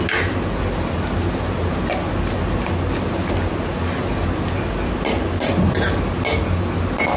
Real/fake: real